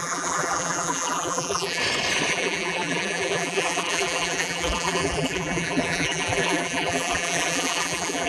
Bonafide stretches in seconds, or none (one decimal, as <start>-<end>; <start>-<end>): 1.8-2.3